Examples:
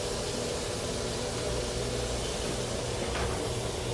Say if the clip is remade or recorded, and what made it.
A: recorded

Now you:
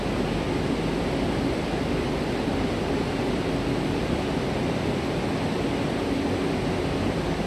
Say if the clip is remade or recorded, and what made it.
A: recorded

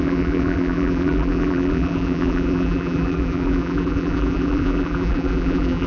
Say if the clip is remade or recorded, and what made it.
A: remade, vocoder, BigVGAN v2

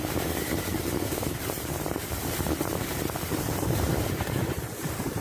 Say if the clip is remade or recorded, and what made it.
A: remade, vocoder, BigVGAN v2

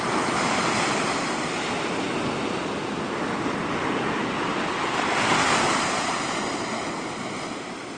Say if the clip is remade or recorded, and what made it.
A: recorded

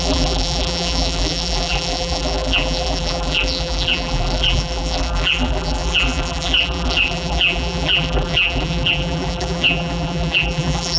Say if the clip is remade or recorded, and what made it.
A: remade, vocoder, BigVGAN v2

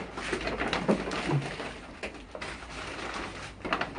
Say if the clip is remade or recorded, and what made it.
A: recorded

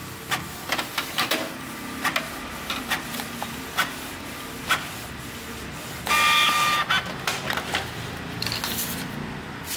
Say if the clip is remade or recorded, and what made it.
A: recorded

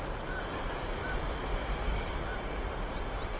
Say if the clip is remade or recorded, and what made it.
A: recorded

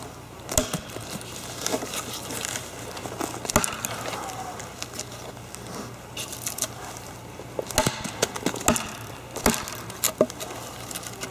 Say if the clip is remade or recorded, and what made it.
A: recorded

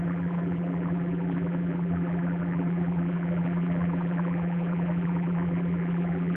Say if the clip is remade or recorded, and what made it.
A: remade, vocoder, BigVGAN v2